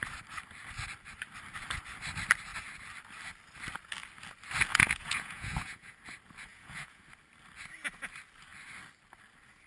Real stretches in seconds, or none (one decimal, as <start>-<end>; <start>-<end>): 0.0-4.7; 6.0-6.5; 7.0-9.7